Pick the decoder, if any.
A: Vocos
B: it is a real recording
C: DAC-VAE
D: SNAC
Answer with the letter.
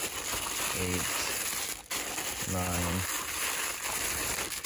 B